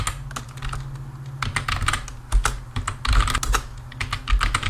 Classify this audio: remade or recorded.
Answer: recorded